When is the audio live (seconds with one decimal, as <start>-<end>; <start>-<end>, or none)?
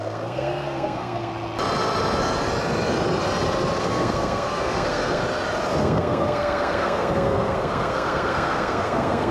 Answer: 1.3-3.8; 5.2-5.8